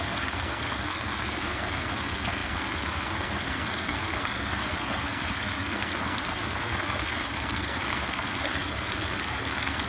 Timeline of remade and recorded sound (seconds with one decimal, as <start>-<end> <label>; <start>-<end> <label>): 0.0-9.9 remade